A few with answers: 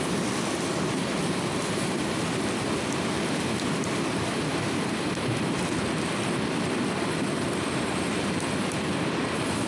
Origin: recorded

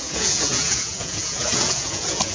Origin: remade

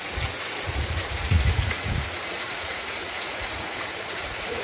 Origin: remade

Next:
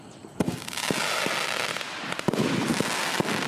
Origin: recorded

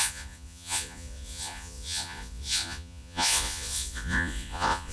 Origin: remade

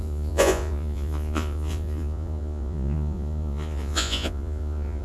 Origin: remade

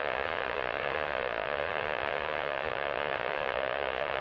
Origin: remade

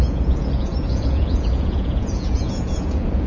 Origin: remade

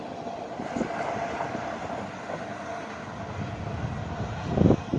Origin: recorded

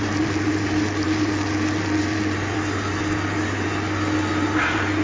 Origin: recorded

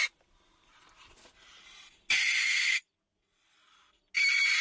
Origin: recorded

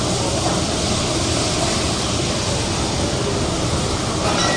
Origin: recorded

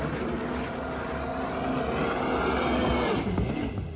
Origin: recorded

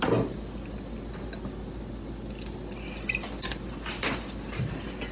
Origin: recorded